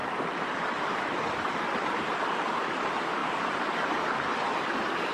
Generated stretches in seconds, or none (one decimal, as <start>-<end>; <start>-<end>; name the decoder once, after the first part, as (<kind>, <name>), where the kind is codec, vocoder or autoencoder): 0.0-5.1 (vocoder, BigVGAN v2)